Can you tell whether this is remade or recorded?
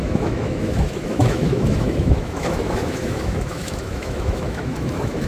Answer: remade